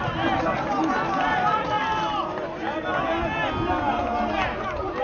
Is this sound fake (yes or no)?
no